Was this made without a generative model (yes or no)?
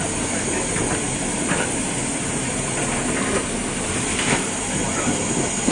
yes